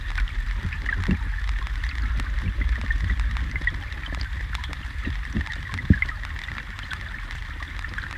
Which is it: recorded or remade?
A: recorded